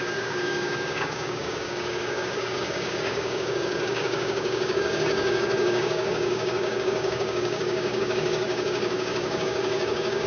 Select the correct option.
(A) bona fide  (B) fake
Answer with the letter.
B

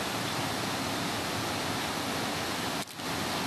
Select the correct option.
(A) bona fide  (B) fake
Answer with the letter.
A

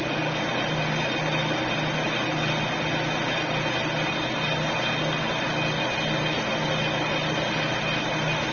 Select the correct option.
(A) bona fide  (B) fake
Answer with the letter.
A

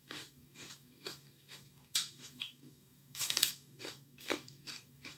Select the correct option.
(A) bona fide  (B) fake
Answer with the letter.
B